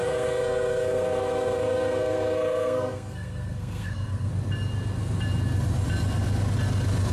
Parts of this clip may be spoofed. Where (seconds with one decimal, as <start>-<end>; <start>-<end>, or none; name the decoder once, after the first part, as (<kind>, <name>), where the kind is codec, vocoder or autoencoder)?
0.0-4.3 (codec, SNAC)